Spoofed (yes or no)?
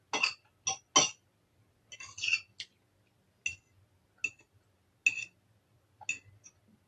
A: no